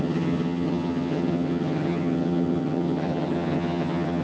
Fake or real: fake